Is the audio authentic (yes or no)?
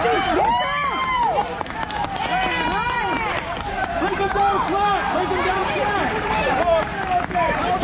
no